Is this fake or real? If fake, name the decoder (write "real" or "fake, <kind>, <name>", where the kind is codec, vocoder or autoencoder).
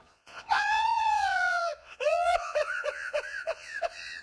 fake, vocoder, Vocos